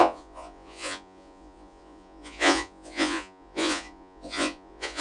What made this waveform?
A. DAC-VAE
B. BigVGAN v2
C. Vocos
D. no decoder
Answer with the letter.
C